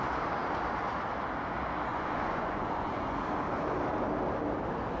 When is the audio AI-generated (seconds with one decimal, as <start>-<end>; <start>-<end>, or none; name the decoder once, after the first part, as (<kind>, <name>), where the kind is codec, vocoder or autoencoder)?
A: 1.9-3.2 (vocoder, Vocos)